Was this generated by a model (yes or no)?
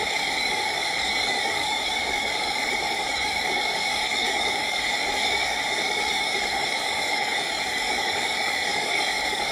yes